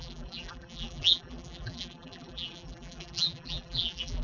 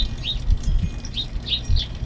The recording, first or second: second